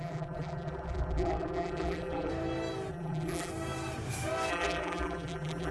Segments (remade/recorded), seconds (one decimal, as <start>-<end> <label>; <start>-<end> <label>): 0.0-2.3 remade; 2.3-2.9 recorded; 2.9-3.5 remade; 3.5-4.5 recorded; 4.5-5.7 remade